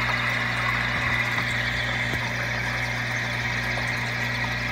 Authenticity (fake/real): real